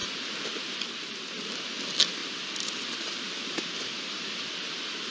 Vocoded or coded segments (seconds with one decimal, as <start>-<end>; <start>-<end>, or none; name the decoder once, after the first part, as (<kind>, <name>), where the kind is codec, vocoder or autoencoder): 2.2-5.1 (vocoder, BigVGAN v2)